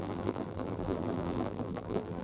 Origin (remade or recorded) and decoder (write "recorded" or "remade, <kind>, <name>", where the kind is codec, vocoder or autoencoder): remade, vocoder, BigVGAN v2